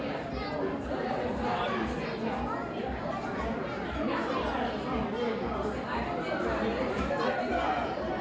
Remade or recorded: recorded